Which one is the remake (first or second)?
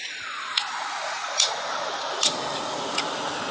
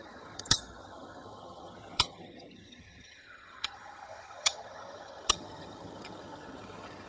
second